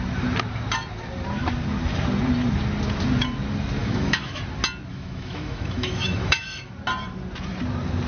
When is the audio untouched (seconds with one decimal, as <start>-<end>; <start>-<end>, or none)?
0.0-3.8; 4.4-4.9; 6.7-8.1